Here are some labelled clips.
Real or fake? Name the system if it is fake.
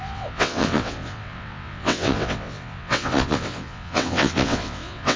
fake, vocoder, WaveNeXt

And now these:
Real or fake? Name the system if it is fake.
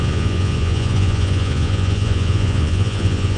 fake, vocoder, Vocos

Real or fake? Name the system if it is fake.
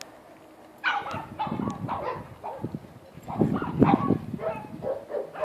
real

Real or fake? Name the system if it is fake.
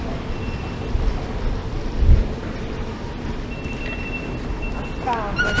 real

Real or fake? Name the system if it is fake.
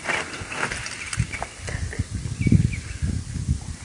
real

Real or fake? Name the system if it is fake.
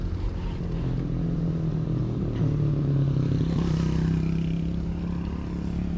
real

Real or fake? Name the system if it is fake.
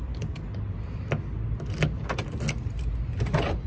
real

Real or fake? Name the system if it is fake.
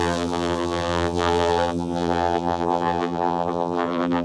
fake, vocoder, BigVGAN v2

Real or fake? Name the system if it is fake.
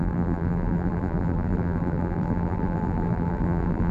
fake, vocoder, BigVGAN v2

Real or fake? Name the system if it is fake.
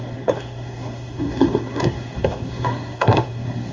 fake, codec, SNAC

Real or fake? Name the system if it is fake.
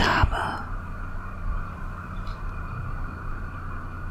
fake, vocoder, BigVGAN v2